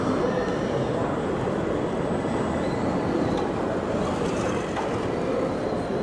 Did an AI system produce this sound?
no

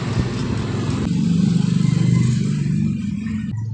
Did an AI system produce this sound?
no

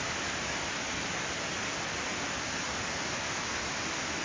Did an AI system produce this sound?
no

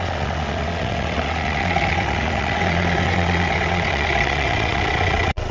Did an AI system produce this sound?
yes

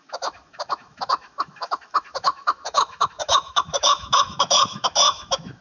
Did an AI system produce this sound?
yes